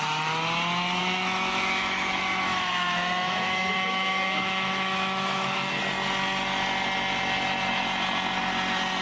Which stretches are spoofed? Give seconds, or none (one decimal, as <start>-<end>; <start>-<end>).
1.0-5.8